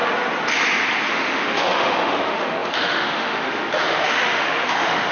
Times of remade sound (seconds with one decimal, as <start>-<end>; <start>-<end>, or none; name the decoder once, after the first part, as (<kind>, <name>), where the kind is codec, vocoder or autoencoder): 1.1-5.1 (autoencoder, DAC-VAE)